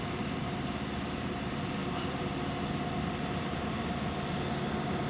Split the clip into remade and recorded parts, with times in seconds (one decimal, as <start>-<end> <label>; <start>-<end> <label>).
0.0-5.1 recorded